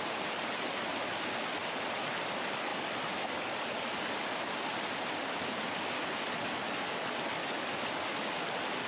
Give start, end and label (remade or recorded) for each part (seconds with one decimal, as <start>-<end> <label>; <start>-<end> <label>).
0.0-8.9 recorded